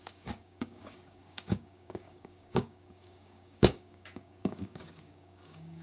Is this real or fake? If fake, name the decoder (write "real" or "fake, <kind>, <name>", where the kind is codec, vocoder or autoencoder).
fake, codec, DAC